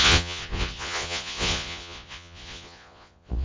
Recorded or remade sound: remade